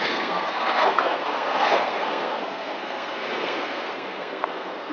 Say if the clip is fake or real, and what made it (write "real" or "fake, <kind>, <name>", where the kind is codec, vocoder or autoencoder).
fake, codec, SNAC